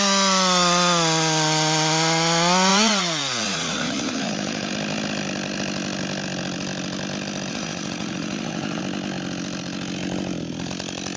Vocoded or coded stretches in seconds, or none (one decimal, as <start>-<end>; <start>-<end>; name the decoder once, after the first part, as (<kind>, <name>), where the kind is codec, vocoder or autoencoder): 2.7-4.7 (vocoder, Vocos); 7.5-8.8